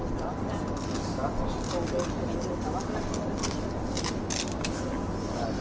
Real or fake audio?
real